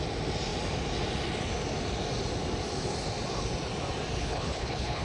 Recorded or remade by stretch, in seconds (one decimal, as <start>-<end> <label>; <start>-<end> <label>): 0.0-4.2 recorded; 4.2-5.0 remade